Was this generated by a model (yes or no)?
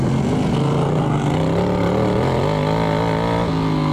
no